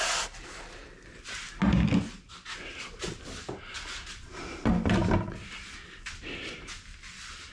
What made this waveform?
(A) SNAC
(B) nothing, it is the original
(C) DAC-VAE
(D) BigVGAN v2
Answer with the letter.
B